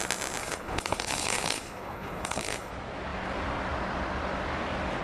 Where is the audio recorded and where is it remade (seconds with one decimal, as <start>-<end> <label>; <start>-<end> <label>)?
0.0-0.4 recorded; 0.4-2.7 remade; 2.7-5.0 recorded